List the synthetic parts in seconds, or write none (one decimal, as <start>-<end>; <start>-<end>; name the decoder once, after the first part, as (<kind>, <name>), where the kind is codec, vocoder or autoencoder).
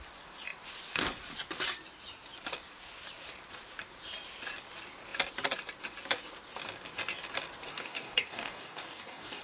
7.7-9.4 (codec, DAC)